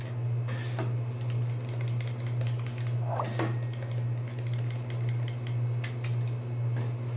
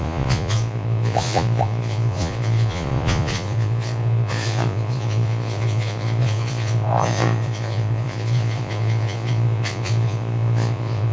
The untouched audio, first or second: first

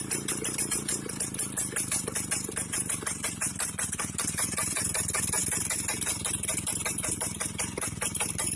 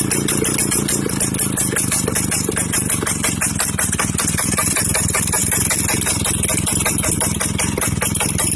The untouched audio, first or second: second